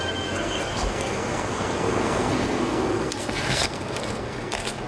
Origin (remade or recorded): remade